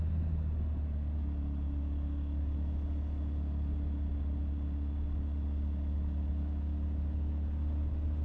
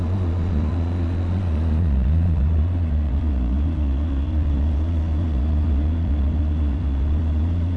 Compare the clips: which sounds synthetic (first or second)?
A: second